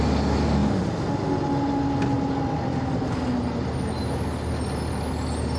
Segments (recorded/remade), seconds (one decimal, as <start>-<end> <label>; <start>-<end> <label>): 0.0-5.6 recorded